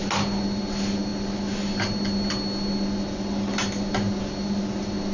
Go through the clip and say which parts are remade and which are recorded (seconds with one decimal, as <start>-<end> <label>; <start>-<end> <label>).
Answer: 0.0-5.1 recorded